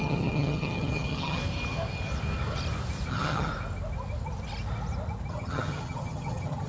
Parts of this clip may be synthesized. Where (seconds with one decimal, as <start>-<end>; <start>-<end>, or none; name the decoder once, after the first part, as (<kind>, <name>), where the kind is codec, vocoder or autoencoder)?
0.0-1.4 (vocoder, HiFi-GAN); 3.1-3.5; 5.3-6.7